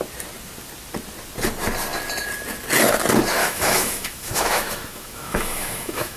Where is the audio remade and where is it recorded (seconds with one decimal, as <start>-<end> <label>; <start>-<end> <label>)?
0.0-3.4 recorded; 3.4-6.2 remade